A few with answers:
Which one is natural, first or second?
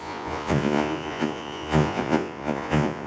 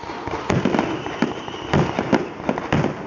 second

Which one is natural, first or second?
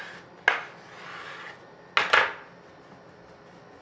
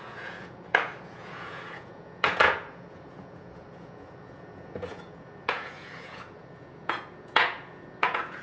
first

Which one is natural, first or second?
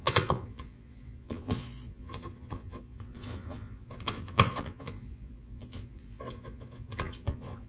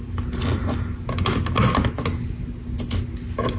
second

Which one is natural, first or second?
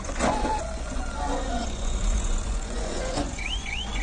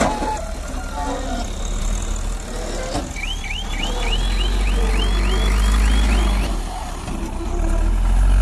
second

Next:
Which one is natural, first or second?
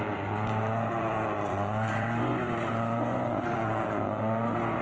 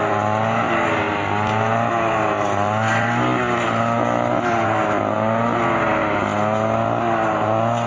second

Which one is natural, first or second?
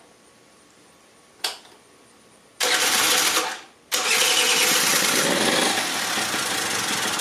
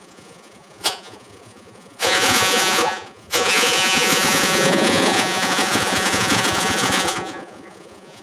first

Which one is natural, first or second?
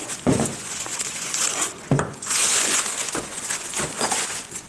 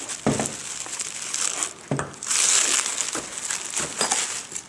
second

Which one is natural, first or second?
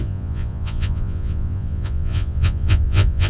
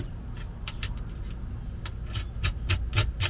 second